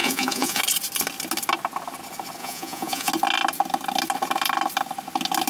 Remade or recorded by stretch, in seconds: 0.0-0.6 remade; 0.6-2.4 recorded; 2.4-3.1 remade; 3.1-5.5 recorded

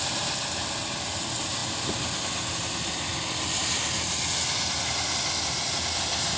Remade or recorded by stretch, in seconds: 0.0-6.4 recorded

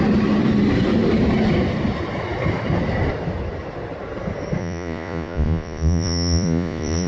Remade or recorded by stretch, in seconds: 0.0-4.6 recorded; 4.6-7.1 remade

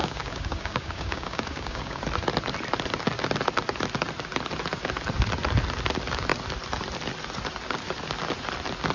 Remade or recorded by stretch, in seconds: 0.0-2.0 remade; 2.0-8.9 recorded

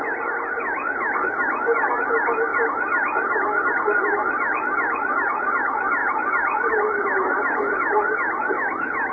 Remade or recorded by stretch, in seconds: 0.0-9.1 recorded

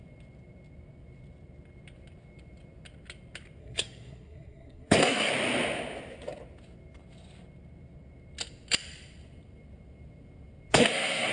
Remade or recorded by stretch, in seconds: 0.0-3.6 recorded; 3.6-5.3 remade; 5.3-10.7 recorded; 10.7-11.3 remade